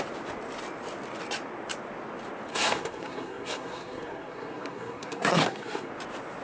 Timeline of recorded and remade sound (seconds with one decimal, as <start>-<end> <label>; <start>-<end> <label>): 0.0-2.5 recorded; 2.5-5.9 remade; 5.9-6.4 recorded